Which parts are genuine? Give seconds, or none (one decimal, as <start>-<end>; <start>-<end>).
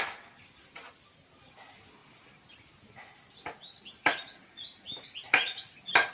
0.0-6.1